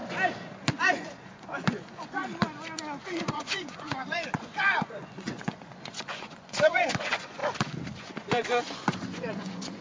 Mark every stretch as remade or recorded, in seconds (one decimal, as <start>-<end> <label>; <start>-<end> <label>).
0.0-0.5 recorded; 0.5-2.2 remade; 2.2-3.0 recorded; 3.0-7.4 remade; 7.4-8.0 recorded; 8.0-9.8 remade